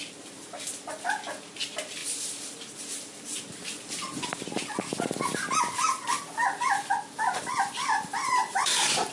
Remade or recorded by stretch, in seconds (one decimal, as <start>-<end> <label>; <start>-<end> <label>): 0.0-8.2 recorded; 8.2-9.1 remade

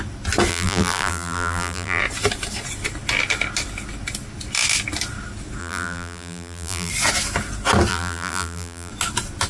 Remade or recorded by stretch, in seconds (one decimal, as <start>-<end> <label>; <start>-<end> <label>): 0.0-0.5 recorded; 0.5-2.0 remade; 2.0-5.6 recorded; 5.6-6.9 remade; 6.9-7.9 recorded; 7.9-8.9 remade; 8.9-9.5 recorded